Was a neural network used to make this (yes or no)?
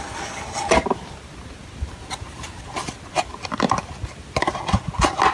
no